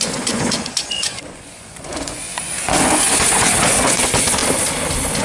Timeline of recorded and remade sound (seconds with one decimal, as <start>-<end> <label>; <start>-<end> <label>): 0.0-4.4 remade; 4.4-5.2 recorded